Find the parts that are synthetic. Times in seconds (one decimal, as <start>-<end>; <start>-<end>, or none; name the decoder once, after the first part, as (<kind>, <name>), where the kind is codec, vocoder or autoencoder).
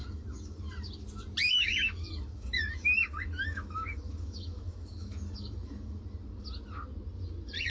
0.0-0.6 (autoencoder, DAC-VAE); 1.4-6.0